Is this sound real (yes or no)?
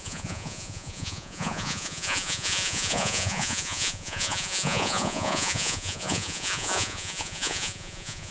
no